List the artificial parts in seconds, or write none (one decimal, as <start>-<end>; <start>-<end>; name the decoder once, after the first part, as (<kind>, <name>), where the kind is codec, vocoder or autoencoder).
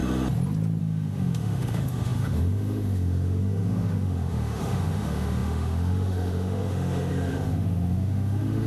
0.8-8.7 (autoencoder, DAC-VAE)